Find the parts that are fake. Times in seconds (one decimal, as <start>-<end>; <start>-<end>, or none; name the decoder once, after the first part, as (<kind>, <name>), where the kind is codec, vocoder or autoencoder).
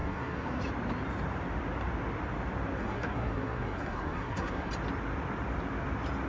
0.0-0.6 (codec, SNAC); 2.8-4.7